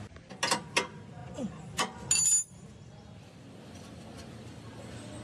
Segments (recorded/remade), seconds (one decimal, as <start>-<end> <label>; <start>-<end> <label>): 0.0-5.2 recorded